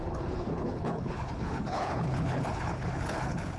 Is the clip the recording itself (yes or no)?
no